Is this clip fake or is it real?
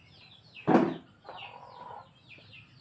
real